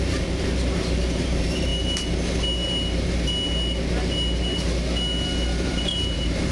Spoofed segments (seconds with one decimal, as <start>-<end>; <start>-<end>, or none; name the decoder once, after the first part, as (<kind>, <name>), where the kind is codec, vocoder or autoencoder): 0.0-1.7 (vocoder, BigVGAN v2); 5.6-6.5